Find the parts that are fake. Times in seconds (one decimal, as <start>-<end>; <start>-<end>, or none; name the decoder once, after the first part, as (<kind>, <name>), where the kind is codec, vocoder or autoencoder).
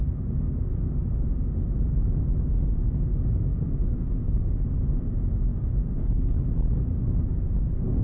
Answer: 3.5-4.5 (codec, DAC); 5.5-6.4